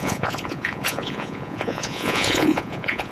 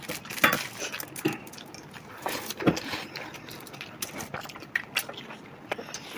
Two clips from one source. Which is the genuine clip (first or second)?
second